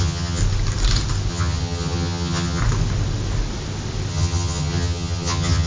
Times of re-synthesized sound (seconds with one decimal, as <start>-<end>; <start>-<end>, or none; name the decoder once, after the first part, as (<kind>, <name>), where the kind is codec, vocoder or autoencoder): 0.0-0.4 (vocoder, HiFi-GAN); 1.3-2.6; 4.1-5.7